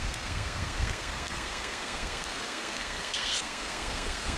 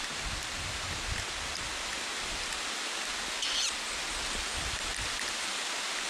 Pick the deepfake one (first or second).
first